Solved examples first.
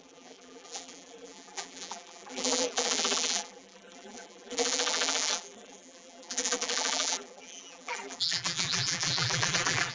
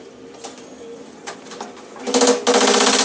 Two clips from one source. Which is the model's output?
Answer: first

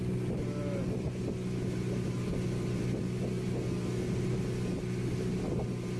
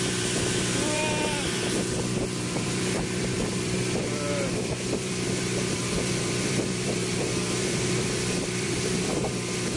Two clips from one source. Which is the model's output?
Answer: second